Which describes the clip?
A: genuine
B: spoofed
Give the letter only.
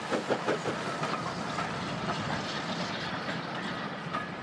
A